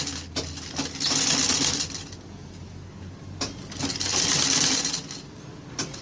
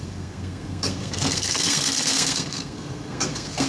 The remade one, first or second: second